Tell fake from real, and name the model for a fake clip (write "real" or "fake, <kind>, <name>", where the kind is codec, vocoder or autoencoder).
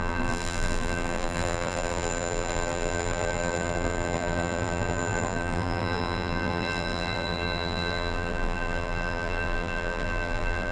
fake, vocoder, BigVGAN v2